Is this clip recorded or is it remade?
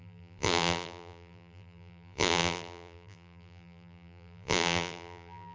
remade